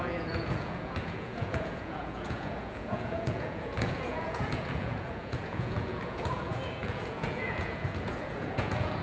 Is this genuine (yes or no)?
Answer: no